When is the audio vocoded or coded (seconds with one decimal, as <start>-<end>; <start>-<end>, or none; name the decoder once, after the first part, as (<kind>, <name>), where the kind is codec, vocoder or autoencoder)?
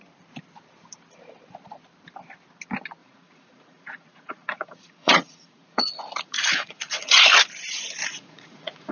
3.0-7.2 (vocoder, Vocos); 8.0-8.9